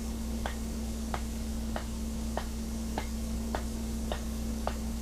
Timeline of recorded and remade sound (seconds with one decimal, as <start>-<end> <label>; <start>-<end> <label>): 0.0-5.0 remade